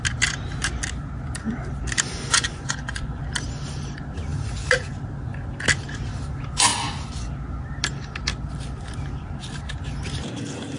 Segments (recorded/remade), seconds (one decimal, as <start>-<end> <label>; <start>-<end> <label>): 0.0-2.1 recorded; 2.1-3.2 remade; 3.2-10.8 recorded